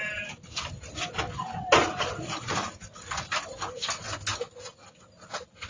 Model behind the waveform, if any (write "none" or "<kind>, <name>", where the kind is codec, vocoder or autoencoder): none